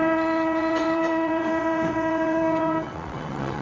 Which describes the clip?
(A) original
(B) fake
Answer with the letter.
B